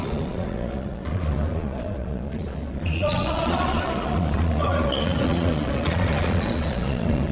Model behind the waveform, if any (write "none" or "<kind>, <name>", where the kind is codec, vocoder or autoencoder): vocoder, Vocos